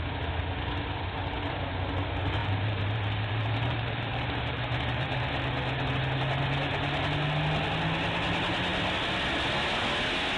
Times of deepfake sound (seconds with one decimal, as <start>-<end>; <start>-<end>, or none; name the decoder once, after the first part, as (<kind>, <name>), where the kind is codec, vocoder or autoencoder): 2.4-5.2 (vocoder, BigVGAN v2)